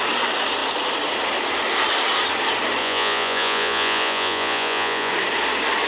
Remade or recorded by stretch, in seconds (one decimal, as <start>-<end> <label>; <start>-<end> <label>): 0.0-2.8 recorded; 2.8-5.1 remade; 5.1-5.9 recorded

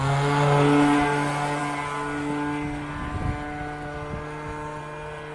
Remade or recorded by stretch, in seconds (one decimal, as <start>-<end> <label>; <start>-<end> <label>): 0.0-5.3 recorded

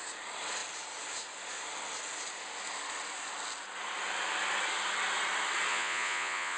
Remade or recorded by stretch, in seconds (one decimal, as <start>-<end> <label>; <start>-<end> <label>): 0.0-5.7 recorded; 5.7-6.6 remade

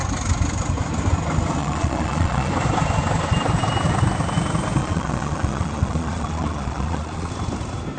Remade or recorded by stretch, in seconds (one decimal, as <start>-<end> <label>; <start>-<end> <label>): 0.0-1.6 recorded; 1.6-2.5 remade; 2.5-4.8 recorded; 4.8-7.3 remade; 7.3-8.0 recorded